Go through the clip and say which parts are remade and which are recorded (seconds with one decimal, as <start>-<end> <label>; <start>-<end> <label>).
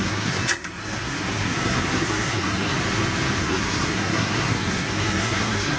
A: 0.0-2.8 remade; 2.8-3.4 recorded; 3.4-5.8 remade